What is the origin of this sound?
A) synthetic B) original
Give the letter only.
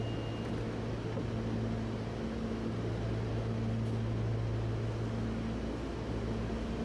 B